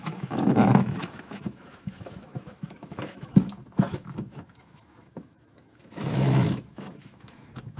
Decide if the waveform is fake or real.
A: fake